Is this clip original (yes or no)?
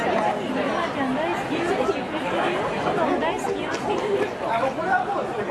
yes